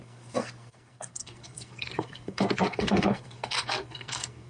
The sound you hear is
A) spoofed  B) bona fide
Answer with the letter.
A